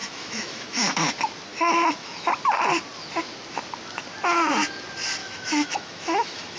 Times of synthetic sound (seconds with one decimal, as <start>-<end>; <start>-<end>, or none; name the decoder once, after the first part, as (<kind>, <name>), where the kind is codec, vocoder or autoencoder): 0.0-1.1 (autoencoder, DAC-VAE); 1.5-2.3; 5.2-6.6